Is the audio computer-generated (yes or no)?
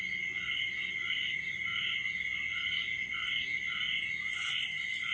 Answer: no